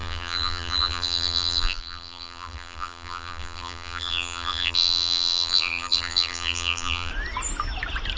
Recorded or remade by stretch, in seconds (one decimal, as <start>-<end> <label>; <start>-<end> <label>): 0.0-7.1 remade; 7.1-8.2 recorded